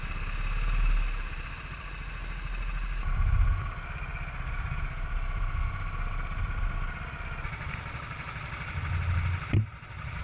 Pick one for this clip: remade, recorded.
recorded